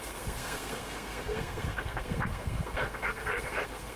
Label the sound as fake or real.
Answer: fake